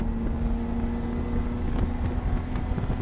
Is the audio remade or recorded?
recorded